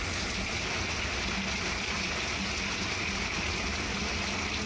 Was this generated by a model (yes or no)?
no